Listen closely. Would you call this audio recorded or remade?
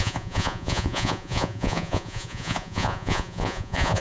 remade